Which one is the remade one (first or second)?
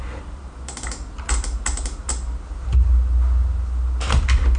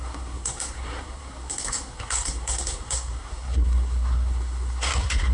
second